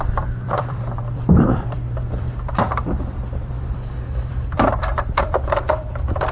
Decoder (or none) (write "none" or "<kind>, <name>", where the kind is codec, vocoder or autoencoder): vocoder, BigVGAN v2